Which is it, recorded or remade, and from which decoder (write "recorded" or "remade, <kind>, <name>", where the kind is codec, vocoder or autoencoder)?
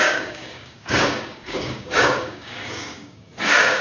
remade, codec, DAC